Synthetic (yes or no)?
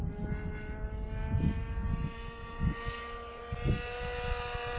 no